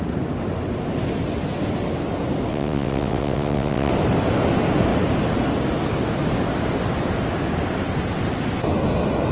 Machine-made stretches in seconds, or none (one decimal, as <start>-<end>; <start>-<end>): 2.5-3.9